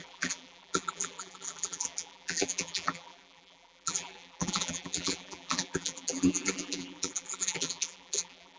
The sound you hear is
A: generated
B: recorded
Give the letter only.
A